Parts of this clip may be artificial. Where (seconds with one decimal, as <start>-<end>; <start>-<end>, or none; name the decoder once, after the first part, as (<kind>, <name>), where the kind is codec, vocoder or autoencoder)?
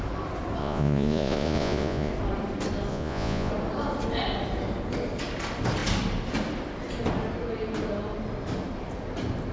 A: 0.6-2.1 (vocoder, Vocos); 2.9-3.5